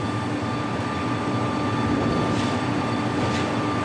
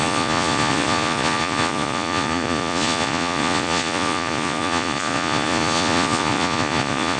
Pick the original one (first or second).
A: first